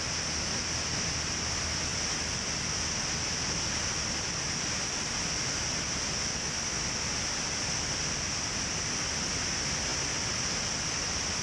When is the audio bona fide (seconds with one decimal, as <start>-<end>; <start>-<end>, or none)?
0.0-11.4